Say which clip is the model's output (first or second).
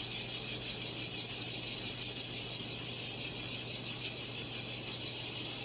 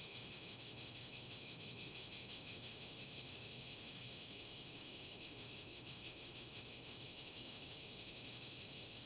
second